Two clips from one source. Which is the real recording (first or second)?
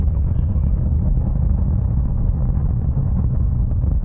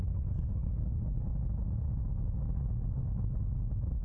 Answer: second